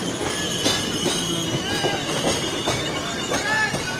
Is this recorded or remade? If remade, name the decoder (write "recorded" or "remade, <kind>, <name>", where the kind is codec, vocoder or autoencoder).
recorded